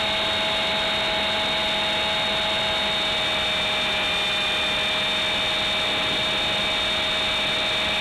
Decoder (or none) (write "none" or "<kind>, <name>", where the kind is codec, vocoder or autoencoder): none